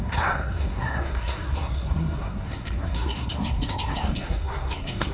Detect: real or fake fake